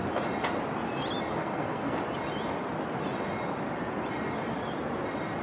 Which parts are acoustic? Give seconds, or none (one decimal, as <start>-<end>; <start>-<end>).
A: 0.0-1.3; 2.0-5.4